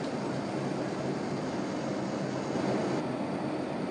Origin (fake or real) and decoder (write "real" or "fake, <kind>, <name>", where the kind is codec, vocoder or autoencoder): real